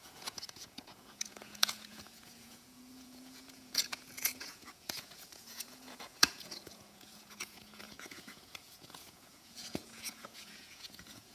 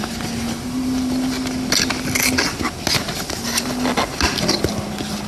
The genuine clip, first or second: second